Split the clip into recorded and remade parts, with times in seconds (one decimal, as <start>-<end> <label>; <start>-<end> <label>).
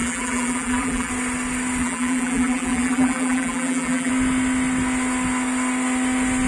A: 0.0-1.1 remade; 1.1-1.8 recorded; 1.8-4.1 remade; 4.1-6.5 recorded